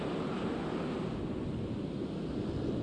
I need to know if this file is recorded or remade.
recorded